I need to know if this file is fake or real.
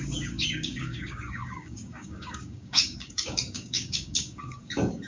fake